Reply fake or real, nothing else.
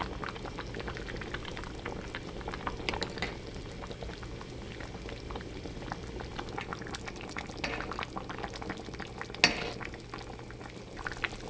real